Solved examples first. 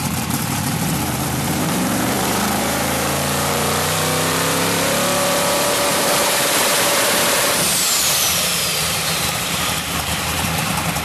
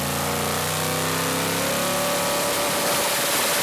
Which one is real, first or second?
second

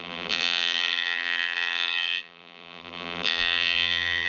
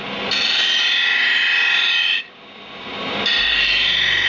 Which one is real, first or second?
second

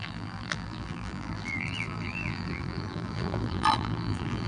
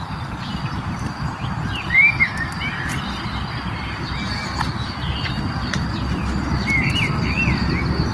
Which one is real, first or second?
second